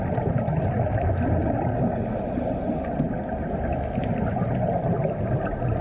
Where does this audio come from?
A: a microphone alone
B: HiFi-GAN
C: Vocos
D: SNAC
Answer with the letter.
A